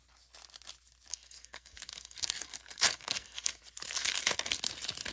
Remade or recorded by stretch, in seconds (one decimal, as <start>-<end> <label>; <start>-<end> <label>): 0.0-1.1 recorded; 1.1-3.6 remade; 3.6-4.0 recorded; 4.0-4.6 remade; 4.6-5.1 recorded